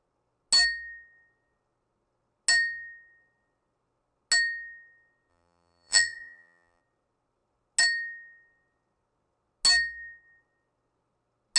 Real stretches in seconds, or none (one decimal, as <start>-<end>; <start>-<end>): 0.0-5.3; 6.8-11.6